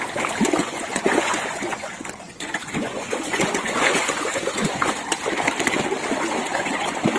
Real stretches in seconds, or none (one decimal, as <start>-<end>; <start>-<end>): 0.0-0.6; 4.9-6.4